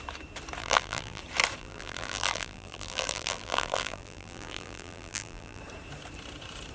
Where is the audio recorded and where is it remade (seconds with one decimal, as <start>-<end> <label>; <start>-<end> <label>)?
0.0-0.6 recorded; 0.6-1.2 remade; 1.2-1.6 recorded; 1.6-5.6 remade; 5.6-6.7 recorded

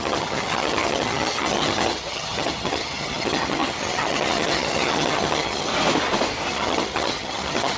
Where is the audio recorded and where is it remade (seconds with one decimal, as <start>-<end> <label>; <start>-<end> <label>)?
0.0-5.7 remade; 5.7-6.5 recorded; 6.5-7.8 remade